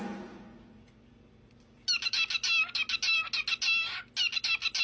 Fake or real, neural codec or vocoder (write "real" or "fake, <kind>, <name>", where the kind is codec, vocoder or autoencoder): real